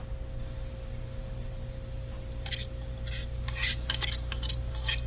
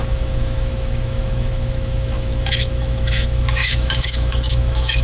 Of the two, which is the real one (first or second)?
first